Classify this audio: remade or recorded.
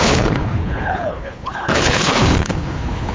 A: remade